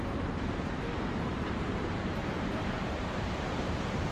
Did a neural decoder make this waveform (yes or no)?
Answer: yes